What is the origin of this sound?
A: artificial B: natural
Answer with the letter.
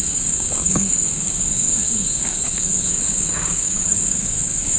A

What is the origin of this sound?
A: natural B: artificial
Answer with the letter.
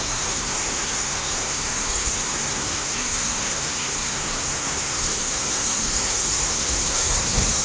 B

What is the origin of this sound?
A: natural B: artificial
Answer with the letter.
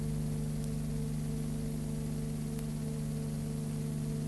A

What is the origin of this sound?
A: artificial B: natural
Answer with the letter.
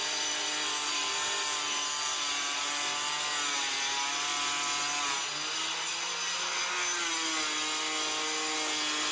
B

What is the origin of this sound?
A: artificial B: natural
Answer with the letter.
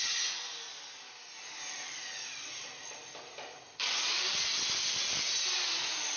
B